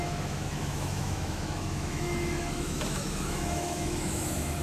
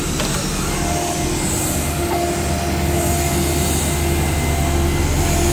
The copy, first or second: first